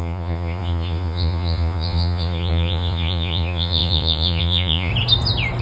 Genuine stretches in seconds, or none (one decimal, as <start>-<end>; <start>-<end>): 4.9-5.6